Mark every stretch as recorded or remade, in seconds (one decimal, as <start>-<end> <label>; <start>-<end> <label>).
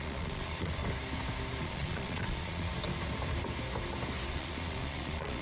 0.0-0.8 remade; 0.8-1.6 recorded; 1.6-2.7 remade; 2.7-4.3 recorded; 4.3-5.4 remade